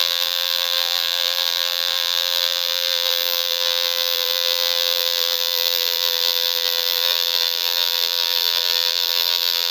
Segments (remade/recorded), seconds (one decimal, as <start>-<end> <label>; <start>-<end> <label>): 0.0-9.7 remade